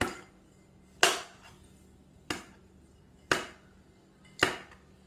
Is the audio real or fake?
real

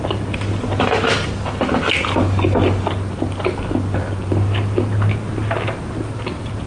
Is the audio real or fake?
real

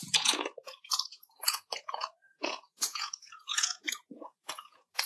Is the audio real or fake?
fake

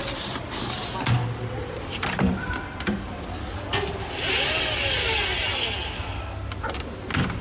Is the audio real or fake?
real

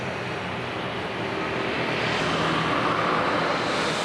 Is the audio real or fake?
real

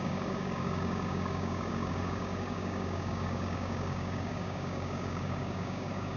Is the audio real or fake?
fake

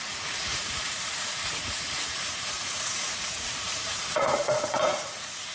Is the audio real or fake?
fake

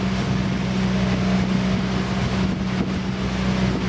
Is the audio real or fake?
real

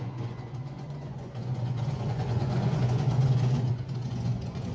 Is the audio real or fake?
fake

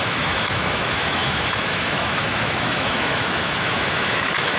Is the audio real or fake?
fake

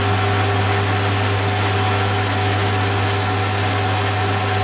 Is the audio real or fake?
real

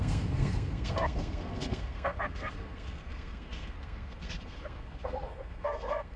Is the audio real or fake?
fake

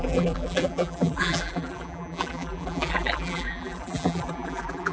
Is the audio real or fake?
fake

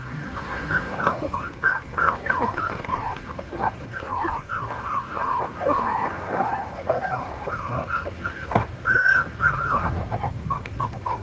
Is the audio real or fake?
fake